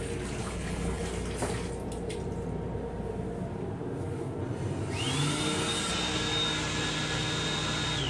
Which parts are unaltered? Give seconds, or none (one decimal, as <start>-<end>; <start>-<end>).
0.0-0.4; 1.0-8.1